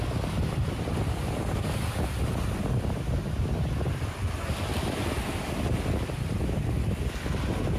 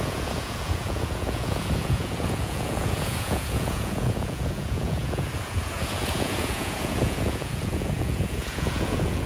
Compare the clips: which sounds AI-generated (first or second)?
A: second